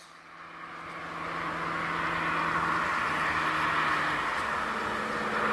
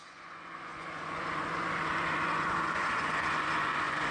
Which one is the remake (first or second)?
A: second